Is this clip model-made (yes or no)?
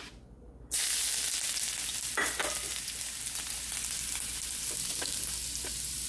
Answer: no